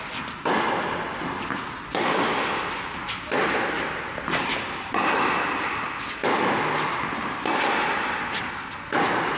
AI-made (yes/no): no